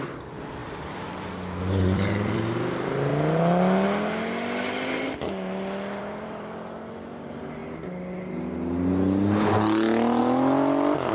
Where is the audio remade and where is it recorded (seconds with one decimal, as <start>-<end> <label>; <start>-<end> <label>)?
0.0-3.1 remade; 3.1-6.0 recorded; 6.0-7.6 remade; 7.6-10.2 recorded; 10.2-11.1 remade